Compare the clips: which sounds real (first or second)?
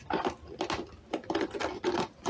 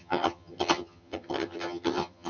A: first